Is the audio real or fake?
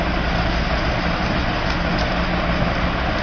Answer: real